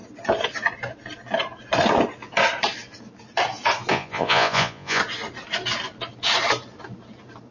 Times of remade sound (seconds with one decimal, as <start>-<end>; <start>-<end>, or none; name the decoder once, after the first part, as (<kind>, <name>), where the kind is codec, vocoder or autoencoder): 3.9-5.0 (vocoder, Vocos)